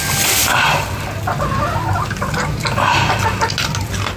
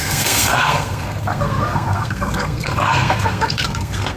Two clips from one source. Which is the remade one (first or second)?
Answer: second